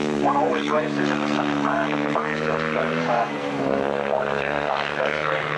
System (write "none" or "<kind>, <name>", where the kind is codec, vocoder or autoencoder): codec, SNAC